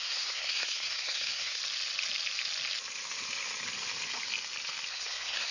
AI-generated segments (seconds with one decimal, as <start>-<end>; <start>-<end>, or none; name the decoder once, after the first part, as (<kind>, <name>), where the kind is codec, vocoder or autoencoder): 0.0-1.6 (codec, SNAC); 4.9-5.5